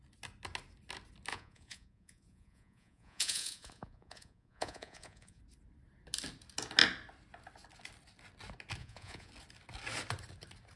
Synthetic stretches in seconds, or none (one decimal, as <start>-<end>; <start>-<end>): 1.3-5.4; 8.8-9.3